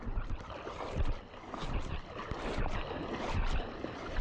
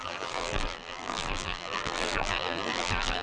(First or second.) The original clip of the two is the first